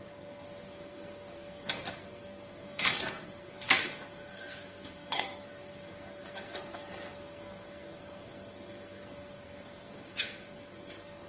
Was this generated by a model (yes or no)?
yes